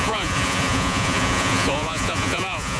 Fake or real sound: fake